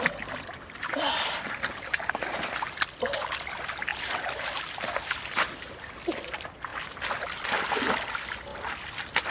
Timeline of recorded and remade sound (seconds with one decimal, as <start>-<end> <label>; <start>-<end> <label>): 0.0-9.3 recorded